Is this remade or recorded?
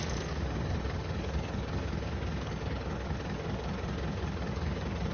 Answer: remade